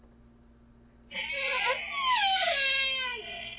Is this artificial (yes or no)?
no